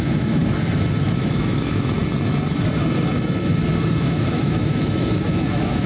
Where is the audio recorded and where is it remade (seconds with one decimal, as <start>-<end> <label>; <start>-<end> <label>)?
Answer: 0.0-0.4 remade; 0.4-1.0 recorded; 1.0-2.0 remade; 2.0-4.0 recorded; 4.0-5.9 remade